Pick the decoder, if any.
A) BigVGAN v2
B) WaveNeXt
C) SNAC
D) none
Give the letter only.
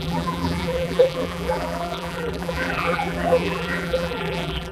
A